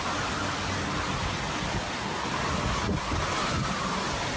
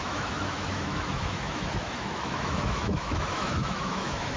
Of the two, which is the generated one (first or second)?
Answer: second